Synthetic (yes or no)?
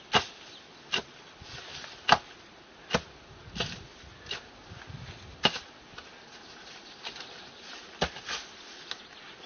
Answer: no